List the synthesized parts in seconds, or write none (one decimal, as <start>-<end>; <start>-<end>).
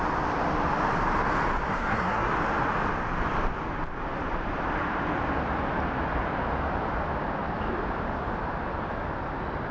1.7-2.3